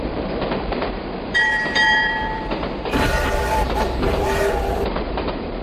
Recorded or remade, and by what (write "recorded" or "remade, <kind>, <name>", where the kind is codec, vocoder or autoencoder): remade, vocoder, BigVGAN v2